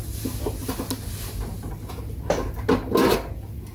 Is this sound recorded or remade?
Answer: recorded